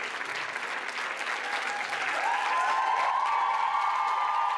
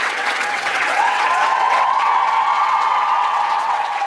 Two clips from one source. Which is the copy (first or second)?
second